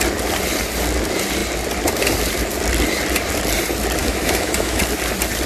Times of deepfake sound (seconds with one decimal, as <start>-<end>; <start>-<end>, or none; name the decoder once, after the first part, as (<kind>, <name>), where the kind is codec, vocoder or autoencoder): 4.0-4.8 (autoencoder, DAC-VAE)